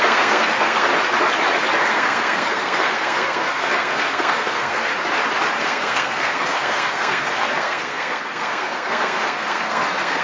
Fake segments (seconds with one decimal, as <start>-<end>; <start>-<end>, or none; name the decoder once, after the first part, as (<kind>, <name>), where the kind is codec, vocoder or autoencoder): 0.0-0.9 (codec, SNAC); 1.9-4.9; 5.6-10.2